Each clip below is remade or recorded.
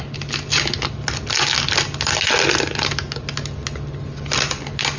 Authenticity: recorded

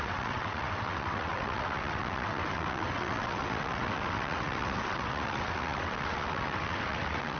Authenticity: remade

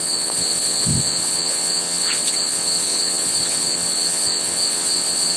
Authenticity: remade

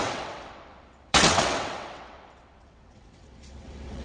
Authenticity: remade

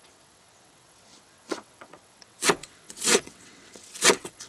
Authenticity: remade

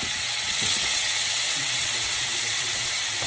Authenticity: remade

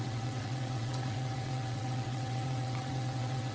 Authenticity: remade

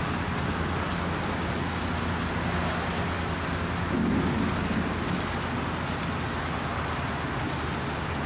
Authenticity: recorded